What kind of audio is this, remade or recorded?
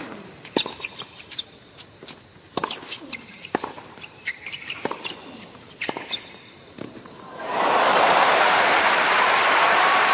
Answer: remade